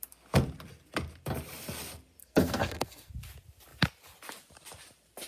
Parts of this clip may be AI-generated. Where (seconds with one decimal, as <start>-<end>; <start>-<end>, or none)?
2.2-3.1